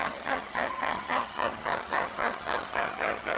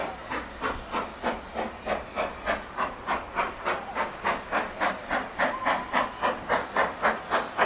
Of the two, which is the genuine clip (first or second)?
second